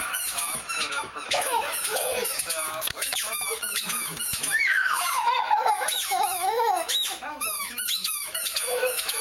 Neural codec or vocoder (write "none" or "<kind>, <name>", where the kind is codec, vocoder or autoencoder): autoencoder, DAC-VAE